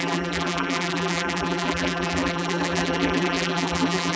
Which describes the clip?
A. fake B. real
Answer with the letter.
A